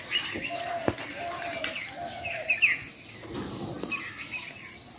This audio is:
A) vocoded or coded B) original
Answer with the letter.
B